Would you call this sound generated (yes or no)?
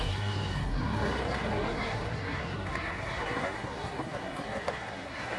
yes